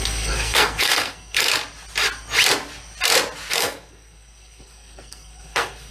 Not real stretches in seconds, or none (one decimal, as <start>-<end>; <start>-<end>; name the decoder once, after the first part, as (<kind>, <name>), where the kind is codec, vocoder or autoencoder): 0.0-1.5 (codec, SNAC); 3.5-5.9